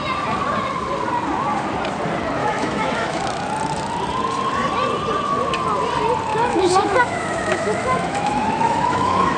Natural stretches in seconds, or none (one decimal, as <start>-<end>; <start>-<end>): 0.0-2.4; 3.2-6.3